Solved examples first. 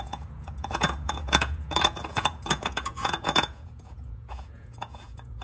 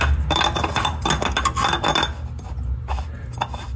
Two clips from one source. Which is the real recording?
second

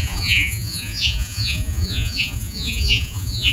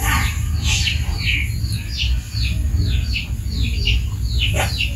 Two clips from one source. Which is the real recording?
second